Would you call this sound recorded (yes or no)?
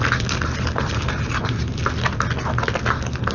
yes